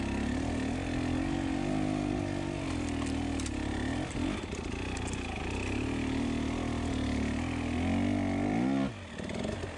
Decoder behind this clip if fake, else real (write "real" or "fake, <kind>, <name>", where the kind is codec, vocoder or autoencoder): real